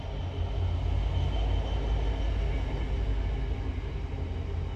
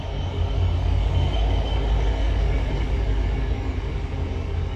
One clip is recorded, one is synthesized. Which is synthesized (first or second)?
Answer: second